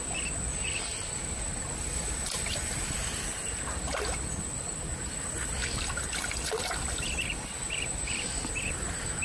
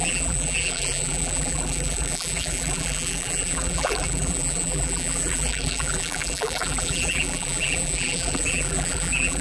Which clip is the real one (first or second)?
first